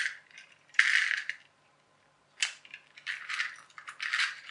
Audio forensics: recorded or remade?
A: remade